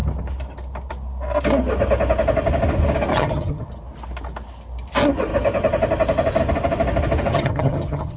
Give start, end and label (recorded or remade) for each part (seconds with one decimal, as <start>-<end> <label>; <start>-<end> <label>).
0.0-3.1 recorded; 3.1-3.7 remade; 3.7-7.3 recorded; 7.3-8.2 remade